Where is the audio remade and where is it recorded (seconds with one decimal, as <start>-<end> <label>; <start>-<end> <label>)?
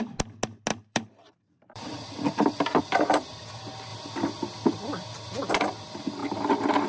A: 0.0-0.7 recorded; 0.7-2.8 remade; 2.8-6.9 recorded